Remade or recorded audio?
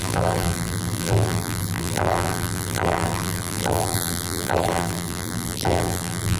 remade